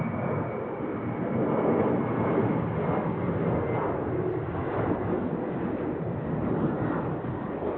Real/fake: real